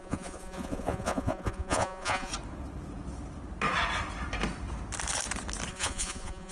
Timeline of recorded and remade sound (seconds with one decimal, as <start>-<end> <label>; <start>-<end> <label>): 0.0-2.3 remade; 2.3-5.7 recorded; 5.7-6.5 remade